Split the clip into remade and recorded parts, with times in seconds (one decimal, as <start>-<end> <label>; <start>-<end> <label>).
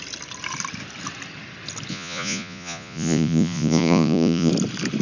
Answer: 0.0-1.9 recorded; 1.9-4.5 remade; 4.5-5.0 recorded